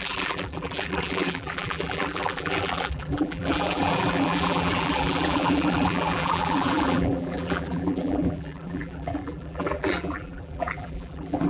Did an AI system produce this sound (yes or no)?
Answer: yes